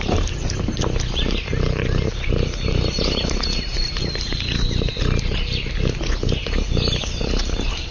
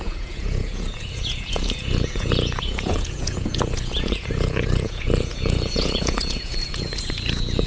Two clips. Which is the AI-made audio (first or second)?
second